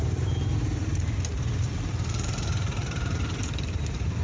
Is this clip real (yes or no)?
no